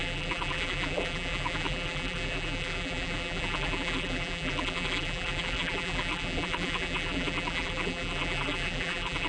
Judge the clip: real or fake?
fake